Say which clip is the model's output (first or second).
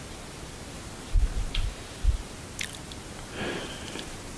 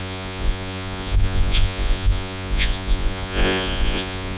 second